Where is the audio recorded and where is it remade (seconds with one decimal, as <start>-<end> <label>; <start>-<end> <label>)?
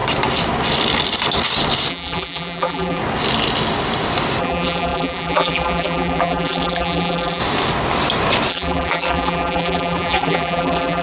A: 0.0-1.9 recorded; 1.9-3.0 remade; 3.0-4.4 recorded; 4.4-7.4 remade; 7.4-8.5 recorded; 8.5-11.0 remade